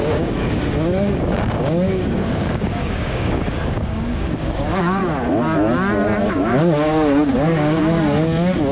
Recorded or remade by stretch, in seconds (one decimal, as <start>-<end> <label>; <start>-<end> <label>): 0.0-5.0 remade; 5.0-6.3 recorded; 6.3-7.8 remade; 7.8-8.7 recorded